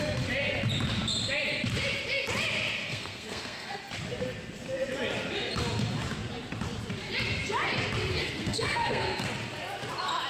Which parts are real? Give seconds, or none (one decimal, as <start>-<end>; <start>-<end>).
0.0-2.8; 3.8-8.1; 9.3-10.3